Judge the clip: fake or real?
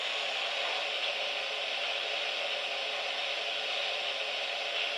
real